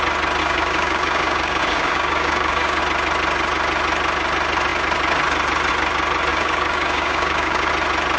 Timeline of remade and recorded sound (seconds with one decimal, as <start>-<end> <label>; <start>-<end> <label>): 0.0-0.4 recorded; 0.4-2.8 remade; 2.8-6.3 recorded; 6.3-7.7 remade; 7.7-8.2 recorded